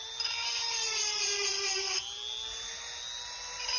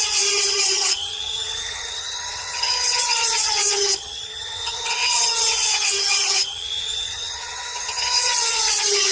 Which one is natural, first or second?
first